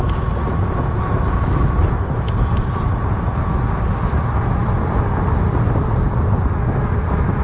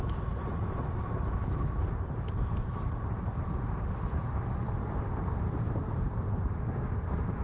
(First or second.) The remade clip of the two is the second